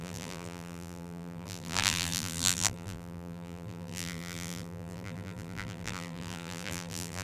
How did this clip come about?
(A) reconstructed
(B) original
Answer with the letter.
A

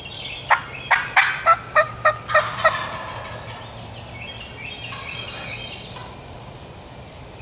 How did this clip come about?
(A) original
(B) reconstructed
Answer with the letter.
A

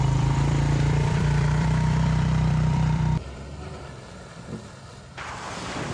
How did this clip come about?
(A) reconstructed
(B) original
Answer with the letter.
A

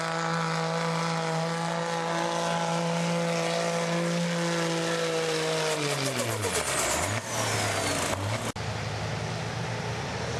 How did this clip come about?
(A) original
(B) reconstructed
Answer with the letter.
A